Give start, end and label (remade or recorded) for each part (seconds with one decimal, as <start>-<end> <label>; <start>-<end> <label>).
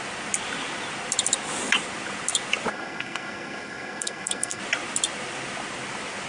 0.0-2.7 recorded; 2.7-4.6 remade; 4.6-6.3 recorded